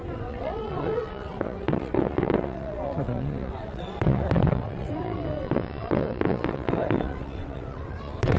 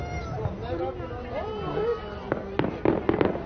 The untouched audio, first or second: second